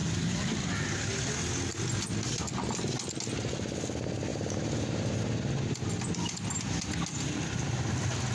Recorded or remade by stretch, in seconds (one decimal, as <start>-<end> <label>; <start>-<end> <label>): 0.0-4.3 recorded; 4.3-5.2 remade; 5.2-8.3 recorded